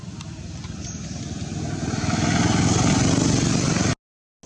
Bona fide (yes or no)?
yes